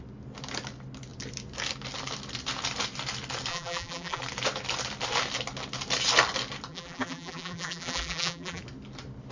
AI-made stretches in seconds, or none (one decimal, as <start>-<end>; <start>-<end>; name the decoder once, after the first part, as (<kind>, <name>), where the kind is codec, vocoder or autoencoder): 3.5-4.2 (vocoder, BigVGAN v2); 6.7-8.6